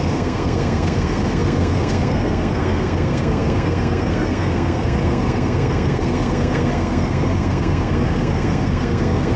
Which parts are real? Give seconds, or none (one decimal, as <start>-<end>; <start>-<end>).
none